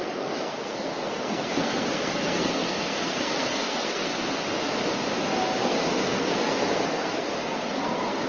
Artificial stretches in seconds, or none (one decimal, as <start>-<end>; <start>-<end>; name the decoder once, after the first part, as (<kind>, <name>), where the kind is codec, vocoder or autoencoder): 0.0-4.1 (codec, SNAC); 5.6-8.3